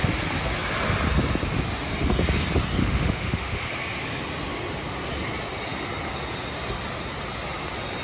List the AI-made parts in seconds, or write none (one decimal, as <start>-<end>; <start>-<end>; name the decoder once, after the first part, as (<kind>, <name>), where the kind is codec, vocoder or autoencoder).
2.8-3.7 (autoencoder, DAC-VAE)